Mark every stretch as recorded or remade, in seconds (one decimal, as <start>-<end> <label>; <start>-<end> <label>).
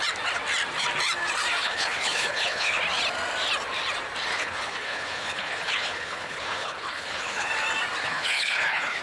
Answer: 0.0-1.6 recorded; 1.6-2.8 remade; 2.8-4.3 recorded; 4.3-7.5 remade; 7.5-8.0 recorded; 8.0-9.0 remade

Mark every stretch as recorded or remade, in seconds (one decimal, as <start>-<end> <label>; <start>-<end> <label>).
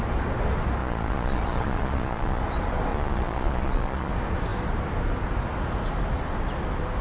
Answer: 0.0-0.8 recorded; 0.8-2.4 remade; 2.4-2.9 recorded; 2.9-4.1 remade; 4.1-7.0 recorded